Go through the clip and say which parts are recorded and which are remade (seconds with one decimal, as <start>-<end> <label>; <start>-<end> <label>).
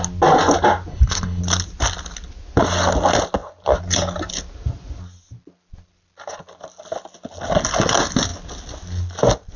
0.0-0.9 recorded; 0.9-1.4 remade; 1.4-9.6 recorded